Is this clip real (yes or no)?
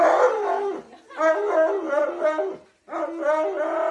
yes